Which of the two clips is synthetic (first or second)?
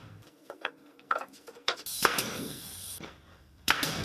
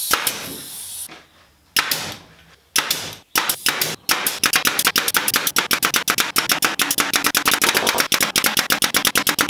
first